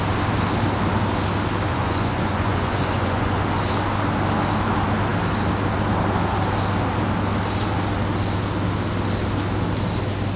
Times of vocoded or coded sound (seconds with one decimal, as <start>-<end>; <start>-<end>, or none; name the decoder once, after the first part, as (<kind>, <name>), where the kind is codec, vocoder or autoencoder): 1.7-3.4 (vocoder, Vocos)